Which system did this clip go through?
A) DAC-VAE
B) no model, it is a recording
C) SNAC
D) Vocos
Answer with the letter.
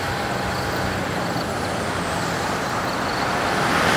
B